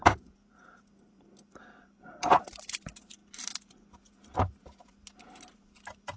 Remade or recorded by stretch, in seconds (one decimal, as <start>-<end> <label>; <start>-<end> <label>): 0.0-6.2 recorded

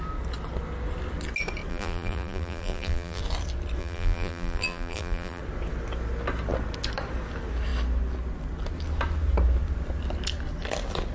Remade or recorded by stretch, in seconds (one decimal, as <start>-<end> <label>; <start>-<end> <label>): 0.0-1.7 recorded; 1.7-3.2 remade; 3.2-3.8 recorded; 3.8-5.4 remade; 5.4-11.1 recorded

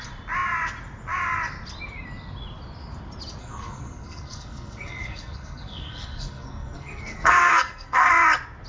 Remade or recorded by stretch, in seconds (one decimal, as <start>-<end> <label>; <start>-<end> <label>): 0.0-3.4 recorded; 3.4-8.1 remade; 8.1-8.7 recorded

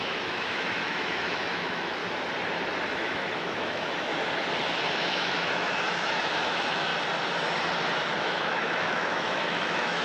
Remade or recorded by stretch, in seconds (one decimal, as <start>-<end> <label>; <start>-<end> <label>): 0.0-2.0 remade; 2.0-2.9 recorded; 2.9-4.1 remade; 4.1-4.9 recorded; 4.9-6.9 remade; 6.9-8.2 recorded; 8.2-10.0 remade

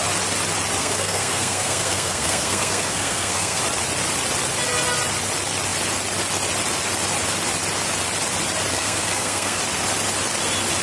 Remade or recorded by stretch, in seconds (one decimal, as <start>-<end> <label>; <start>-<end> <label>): 0.0-0.8 recorded; 0.8-3.6 remade; 3.6-8.7 recorded; 8.7-9.6 remade; 9.6-10.8 recorded

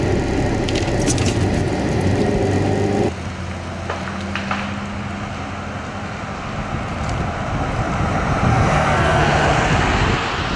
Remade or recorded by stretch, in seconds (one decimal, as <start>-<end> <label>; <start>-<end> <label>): 0.0-8.5 recorded; 8.5-9.3 remade; 9.3-10.6 recorded